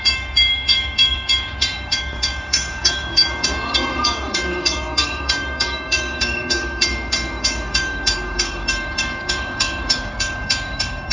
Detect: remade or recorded remade